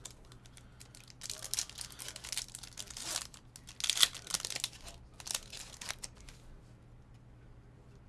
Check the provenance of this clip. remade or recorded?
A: recorded